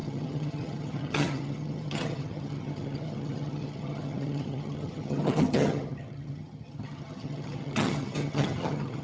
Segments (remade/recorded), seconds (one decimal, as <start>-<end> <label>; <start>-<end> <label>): 0.0-9.0 remade